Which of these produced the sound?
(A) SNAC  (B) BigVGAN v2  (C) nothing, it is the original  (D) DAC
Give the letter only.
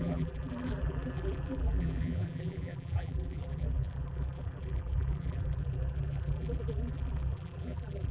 B